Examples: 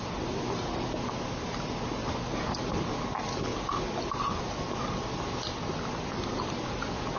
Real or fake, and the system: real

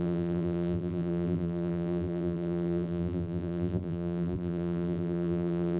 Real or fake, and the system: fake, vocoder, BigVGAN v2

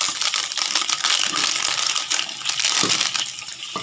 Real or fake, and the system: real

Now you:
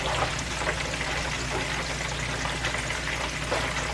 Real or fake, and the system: real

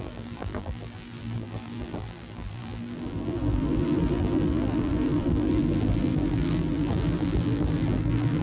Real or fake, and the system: fake, vocoder, BigVGAN v2